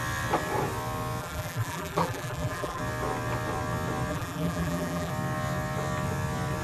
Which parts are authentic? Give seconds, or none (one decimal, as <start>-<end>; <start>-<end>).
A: 0.0-1.2; 2.8-4.1; 5.1-6.6